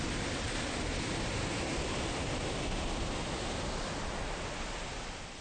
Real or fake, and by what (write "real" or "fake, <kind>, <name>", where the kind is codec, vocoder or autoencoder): real